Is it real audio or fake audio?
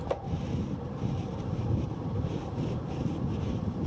fake